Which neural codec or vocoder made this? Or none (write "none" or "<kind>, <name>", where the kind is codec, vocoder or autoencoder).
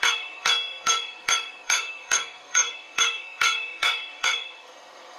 codec, SNAC